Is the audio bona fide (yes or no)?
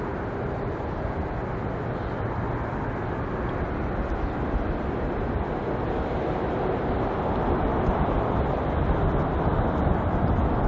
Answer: yes